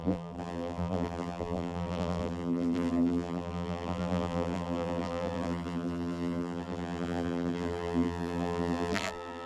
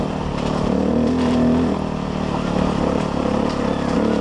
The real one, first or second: second